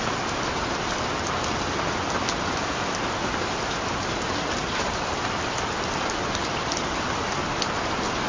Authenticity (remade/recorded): recorded